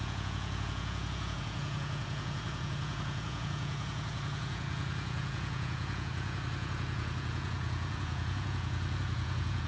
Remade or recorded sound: remade